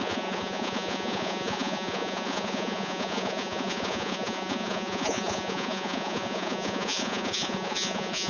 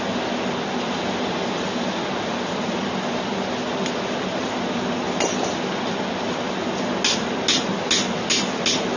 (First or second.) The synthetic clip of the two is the first